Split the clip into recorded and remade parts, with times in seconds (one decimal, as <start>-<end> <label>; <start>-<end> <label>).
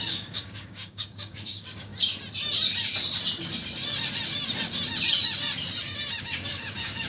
0.0-1.9 remade; 1.9-6.2 recorded; 6.2-7.1 remade